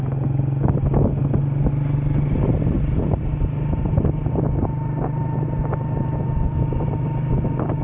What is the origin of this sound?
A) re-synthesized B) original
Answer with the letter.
B